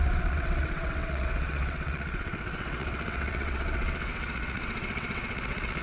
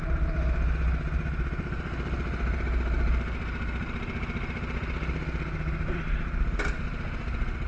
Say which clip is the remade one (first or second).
first